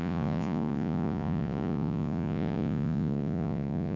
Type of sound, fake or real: fake